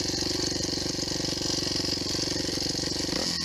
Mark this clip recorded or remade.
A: recorded